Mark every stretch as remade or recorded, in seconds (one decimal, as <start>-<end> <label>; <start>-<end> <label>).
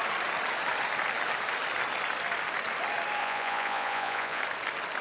0.0-3.2 recorded; 3.2-4.4 remade; 4.4-5.0 recorded